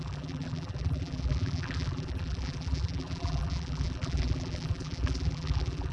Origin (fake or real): fake